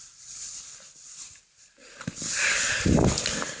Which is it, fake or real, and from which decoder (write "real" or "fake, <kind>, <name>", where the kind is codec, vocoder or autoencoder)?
real